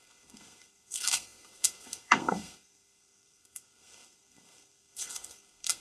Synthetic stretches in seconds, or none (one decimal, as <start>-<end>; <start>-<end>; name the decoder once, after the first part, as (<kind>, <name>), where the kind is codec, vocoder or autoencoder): 0.0-5.8 (codec, SNAC)